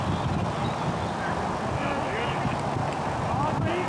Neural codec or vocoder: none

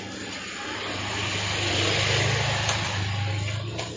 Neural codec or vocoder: none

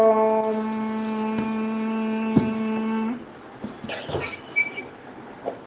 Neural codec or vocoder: none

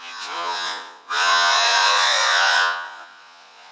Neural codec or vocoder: vocoder, Vocos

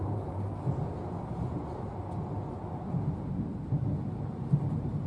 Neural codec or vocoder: none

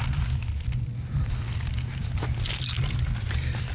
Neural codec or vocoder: none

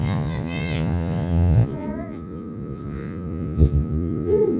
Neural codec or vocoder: vocoder, Vocos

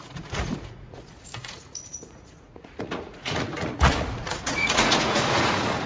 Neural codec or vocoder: vocoder, Vocos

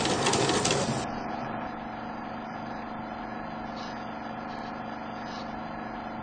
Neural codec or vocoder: none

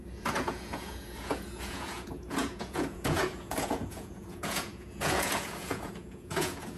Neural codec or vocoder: vocoder, Vocos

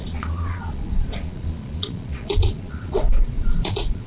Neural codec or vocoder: vocoder, Vocos